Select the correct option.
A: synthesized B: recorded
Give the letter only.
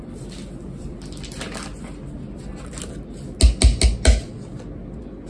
B